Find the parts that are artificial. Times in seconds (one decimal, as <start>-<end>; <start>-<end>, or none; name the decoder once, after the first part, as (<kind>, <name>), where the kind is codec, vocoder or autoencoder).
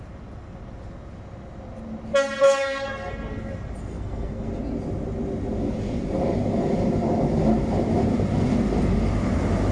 2.4-3.1 (codec, SNAC); 3.9-4.5